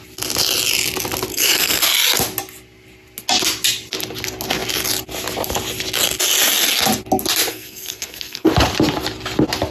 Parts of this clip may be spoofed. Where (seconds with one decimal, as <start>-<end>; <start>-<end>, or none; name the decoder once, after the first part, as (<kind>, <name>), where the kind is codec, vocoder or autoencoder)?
1.3-1.8 (codec, SNAC); 7.5-8.5